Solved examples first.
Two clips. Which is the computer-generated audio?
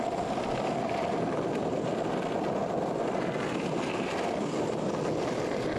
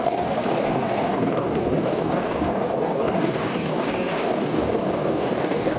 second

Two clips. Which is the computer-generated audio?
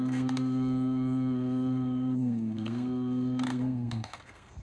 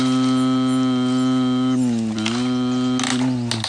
first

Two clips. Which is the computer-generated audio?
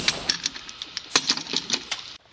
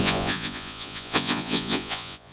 second